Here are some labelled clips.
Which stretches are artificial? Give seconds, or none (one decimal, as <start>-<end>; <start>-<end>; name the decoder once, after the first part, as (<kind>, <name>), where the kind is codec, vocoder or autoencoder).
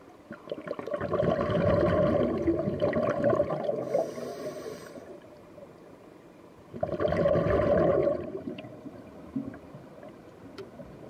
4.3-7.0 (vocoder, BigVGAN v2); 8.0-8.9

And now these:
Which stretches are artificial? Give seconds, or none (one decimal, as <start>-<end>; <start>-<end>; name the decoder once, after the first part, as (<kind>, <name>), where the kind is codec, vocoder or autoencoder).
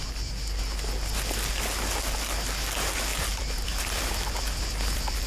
3.1-5.3 (vocoder, BigVGAN v2)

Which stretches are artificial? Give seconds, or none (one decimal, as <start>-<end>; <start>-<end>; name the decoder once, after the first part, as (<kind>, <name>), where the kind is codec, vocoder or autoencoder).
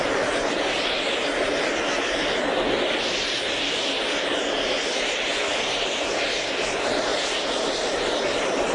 0.0-1.2 (vocoder, BigVGAN v2); 3.7-8.7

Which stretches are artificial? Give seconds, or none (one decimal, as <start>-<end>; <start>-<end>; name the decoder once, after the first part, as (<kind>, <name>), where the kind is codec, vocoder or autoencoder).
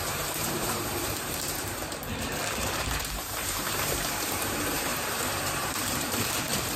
0.0-1.8 (vocoder, BigVGAN v2); 2.6-6.8